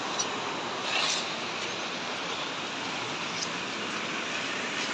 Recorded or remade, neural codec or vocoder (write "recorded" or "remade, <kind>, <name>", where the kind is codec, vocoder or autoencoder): recorded